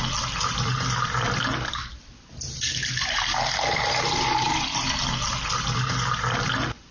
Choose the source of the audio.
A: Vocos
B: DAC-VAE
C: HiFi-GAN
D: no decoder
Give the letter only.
D